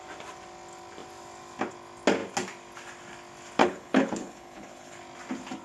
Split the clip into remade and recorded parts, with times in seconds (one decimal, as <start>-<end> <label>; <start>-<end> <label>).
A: 0.0-3.6 recorded; 3.6-5.0 remade; 5.0-5.6 recorded